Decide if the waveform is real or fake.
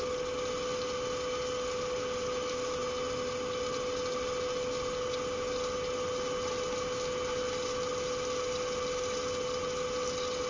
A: real